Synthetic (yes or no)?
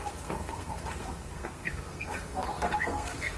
yes